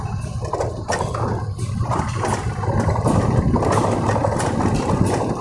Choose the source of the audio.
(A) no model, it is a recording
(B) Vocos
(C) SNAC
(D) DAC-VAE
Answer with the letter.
A